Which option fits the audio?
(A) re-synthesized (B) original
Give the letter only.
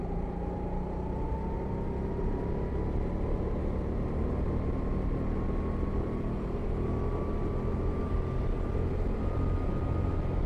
B